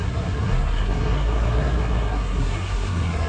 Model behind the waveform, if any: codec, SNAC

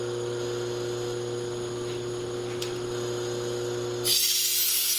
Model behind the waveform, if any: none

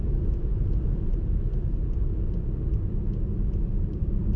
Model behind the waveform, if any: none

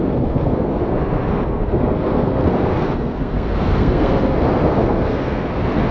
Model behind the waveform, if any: codec, SNAC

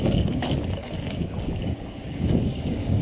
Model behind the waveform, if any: codec, DAC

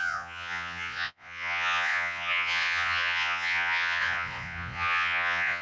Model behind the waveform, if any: vocoder, Vocos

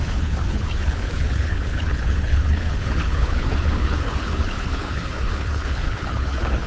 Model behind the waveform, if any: codec, HILCodec